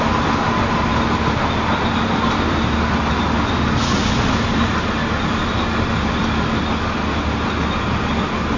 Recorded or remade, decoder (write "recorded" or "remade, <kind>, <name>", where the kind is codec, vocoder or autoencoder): recorded